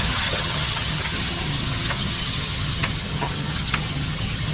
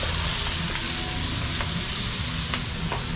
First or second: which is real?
second